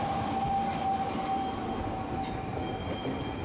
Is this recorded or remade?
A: recorded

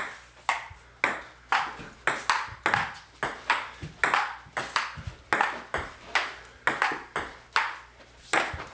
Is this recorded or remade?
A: recorded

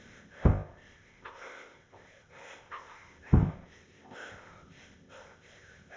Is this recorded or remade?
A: remade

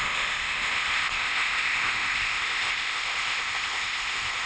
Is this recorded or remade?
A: remade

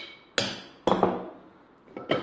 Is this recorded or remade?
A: recorded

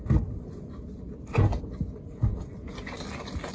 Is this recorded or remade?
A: recorded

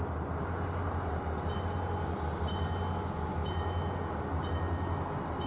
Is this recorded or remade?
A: recorded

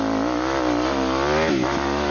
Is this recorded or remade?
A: recorded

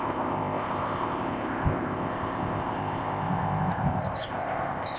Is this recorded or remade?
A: remade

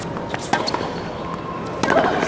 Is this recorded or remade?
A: recorded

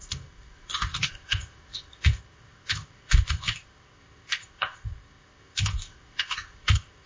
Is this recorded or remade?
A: remade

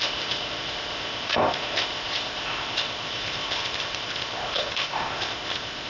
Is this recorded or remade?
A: remade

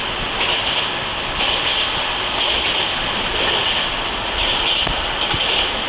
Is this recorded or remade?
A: recorded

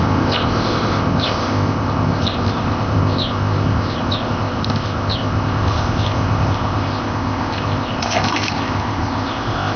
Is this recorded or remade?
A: remade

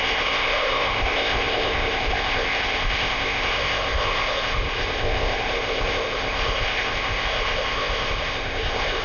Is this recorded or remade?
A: remade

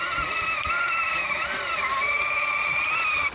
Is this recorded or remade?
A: recorded